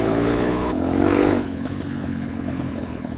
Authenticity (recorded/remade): remade